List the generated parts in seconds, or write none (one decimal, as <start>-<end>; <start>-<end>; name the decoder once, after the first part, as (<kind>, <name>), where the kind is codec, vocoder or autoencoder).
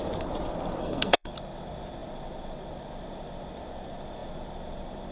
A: 0.8-1.3 (codec, SNAC)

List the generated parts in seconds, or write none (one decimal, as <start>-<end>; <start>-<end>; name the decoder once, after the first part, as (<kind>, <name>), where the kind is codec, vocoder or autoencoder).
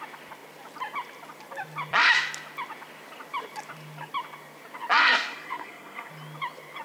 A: 5.0-6.1 (codec, SNAC)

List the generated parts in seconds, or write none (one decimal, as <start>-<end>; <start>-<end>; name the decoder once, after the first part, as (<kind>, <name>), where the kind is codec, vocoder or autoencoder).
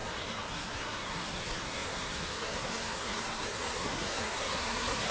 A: 0.0-5.1 (codec, SNAC)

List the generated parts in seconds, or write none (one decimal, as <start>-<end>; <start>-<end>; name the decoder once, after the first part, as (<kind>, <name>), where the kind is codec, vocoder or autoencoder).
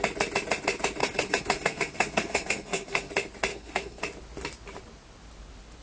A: 1.0-3.1 (codec, SNAC); 3.5-4.0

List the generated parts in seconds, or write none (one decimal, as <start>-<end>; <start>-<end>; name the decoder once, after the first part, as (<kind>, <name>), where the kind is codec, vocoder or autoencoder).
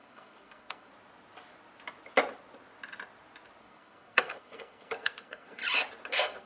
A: 0.0-0.9 (codec, SNAC); 3.6-5.6; 6.1-6.5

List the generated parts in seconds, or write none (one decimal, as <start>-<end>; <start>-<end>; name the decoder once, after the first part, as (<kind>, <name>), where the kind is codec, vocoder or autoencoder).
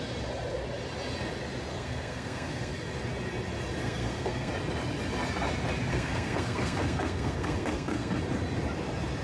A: 1.7-2.7 (codec, SNAC); 3.8-4.5; 5.9-8.2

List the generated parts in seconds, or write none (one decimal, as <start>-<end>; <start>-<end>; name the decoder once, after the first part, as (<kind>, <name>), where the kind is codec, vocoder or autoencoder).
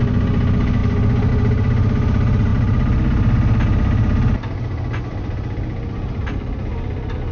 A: none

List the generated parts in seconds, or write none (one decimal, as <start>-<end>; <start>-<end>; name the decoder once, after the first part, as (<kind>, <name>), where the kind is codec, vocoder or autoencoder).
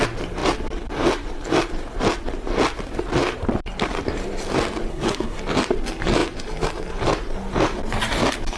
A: 4.9-5.4 (codec, SNAC)